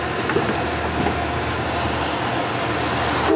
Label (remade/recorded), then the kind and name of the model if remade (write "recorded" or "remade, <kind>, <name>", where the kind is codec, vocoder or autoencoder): recorded